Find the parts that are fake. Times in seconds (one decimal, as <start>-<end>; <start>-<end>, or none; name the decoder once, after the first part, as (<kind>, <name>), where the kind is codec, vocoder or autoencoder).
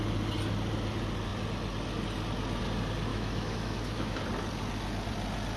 3.1-4.2 (autoencoder, DAC-VAE)